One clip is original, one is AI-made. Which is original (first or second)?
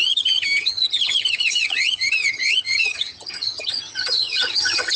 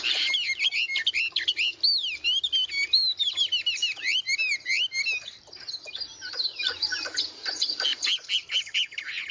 second